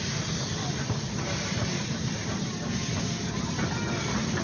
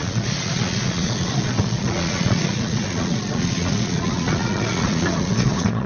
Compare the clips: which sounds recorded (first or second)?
first